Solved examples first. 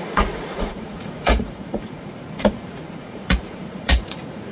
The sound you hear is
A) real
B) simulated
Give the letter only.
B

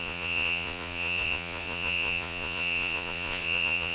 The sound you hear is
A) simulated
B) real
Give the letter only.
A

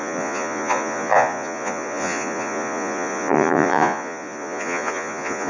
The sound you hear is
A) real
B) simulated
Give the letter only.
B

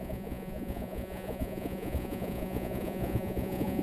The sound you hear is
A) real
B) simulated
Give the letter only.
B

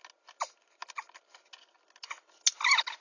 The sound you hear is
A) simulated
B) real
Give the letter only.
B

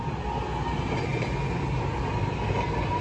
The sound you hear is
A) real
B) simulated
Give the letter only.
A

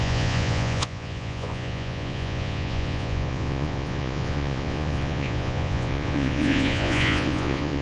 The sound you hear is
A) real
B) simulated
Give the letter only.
B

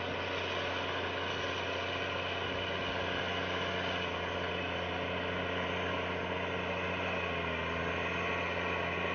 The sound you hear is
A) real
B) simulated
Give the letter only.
A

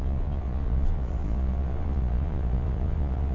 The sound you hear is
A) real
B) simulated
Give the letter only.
B